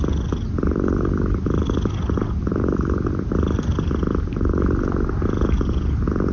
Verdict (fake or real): real